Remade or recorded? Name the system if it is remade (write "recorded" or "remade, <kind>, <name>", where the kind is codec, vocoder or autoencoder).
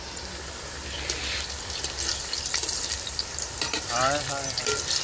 recorded